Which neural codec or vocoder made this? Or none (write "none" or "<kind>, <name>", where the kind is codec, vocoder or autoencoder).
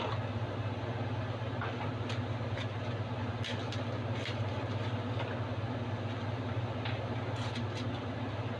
none